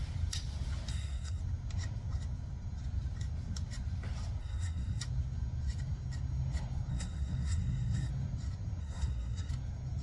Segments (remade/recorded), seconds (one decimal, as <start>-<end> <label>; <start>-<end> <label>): 0.0-0.9 recorded; 0.9-1.4 remade; 1.4-4.4 recorded; 4.4-5.0 remade; 5.0-6.9 recorded; 6.9-8.1 remade; 8.1-8.8 recorded; 8.8-9.5 remade; 9.5-10.0 recorded